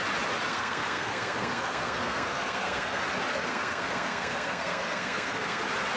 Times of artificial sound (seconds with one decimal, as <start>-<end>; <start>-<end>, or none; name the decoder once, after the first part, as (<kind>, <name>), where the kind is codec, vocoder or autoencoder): 0.5-3.0 (codec, SNAC); 3.5-5.6